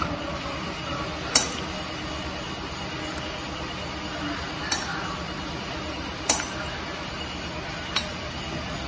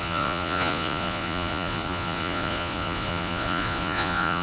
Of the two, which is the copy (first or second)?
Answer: second